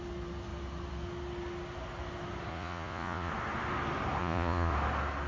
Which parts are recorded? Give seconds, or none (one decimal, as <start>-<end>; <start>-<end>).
0.0-2.5; 3.3-4.2; 4.7-5.3